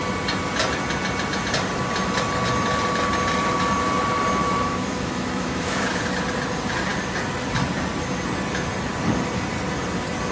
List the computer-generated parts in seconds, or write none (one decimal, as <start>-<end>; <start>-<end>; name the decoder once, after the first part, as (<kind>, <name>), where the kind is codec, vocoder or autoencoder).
4.4-6.0 (autoencoder, DAC-VAE)